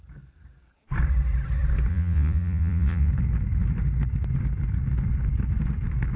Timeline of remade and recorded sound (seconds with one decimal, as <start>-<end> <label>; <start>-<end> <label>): 0.0-1.9 recorded; 1.9-3.1 remade; 3.1-6.2 recorded